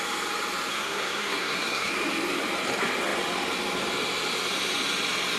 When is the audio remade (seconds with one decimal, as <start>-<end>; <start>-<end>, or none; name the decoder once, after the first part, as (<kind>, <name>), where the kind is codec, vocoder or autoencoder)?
0.7-1.9 (codec, SNAC)